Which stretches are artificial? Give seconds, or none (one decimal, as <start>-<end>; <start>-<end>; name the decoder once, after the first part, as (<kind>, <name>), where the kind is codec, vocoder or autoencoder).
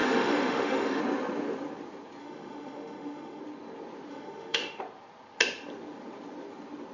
0.0-1.0 (autoencoder, DAC-VAE); 2.2-3.4; 4.1-4.8